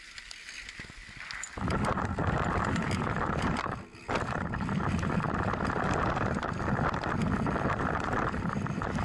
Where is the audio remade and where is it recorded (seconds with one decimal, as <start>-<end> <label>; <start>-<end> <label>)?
0.0-9.0 recorded